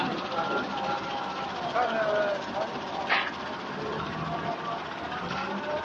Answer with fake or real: real